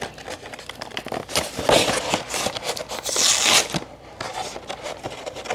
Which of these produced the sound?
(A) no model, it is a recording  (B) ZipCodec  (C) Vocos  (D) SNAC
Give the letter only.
A